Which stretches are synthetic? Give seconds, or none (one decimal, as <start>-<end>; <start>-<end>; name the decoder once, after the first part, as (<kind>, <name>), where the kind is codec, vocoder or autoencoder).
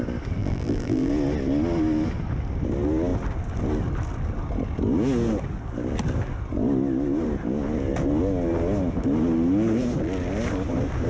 0.4-1.1 (vocoder, BigVGAN v2)